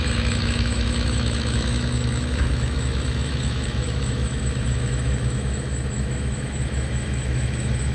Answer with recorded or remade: remade